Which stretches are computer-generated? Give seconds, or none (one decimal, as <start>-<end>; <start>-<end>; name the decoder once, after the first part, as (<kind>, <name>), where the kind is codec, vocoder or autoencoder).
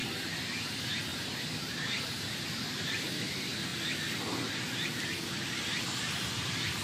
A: 1.1-3.2 (vocoder, BigVGAN v2)